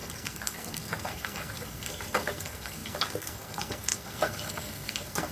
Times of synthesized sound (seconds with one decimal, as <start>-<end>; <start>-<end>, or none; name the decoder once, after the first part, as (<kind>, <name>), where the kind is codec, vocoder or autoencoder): 0.0-5.3 (codec, SNAC)